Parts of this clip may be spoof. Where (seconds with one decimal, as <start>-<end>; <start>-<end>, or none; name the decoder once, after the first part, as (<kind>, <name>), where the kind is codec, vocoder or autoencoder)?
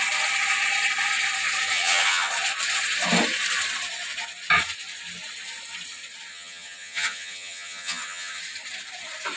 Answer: 1.7-2.3 (vocoder, HiFi-GAN); 6.3-8.4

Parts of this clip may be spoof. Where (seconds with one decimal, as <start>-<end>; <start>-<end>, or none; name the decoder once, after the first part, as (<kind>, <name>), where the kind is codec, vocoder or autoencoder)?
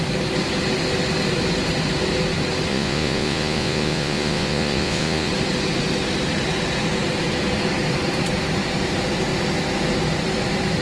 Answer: 2.7-5.3 (vocoder, Vocos)